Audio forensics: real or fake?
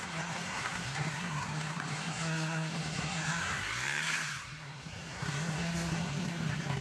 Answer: fake